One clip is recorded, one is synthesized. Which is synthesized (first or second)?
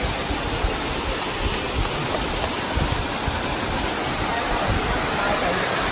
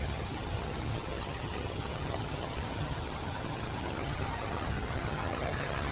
second